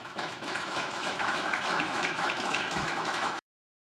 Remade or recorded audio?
remade